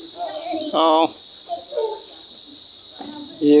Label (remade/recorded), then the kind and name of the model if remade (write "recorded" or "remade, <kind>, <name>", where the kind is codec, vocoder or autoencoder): recorded